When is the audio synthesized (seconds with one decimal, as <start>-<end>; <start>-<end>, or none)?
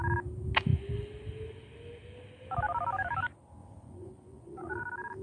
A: 3.6-4.8